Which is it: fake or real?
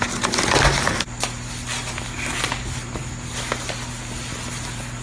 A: real